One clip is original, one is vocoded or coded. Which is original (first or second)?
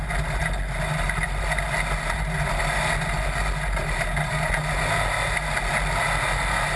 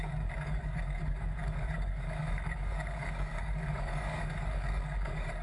first